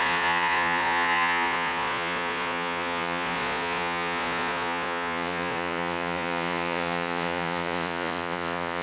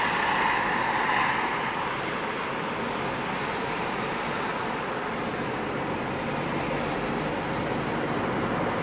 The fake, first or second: first